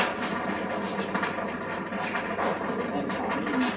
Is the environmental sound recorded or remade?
recorded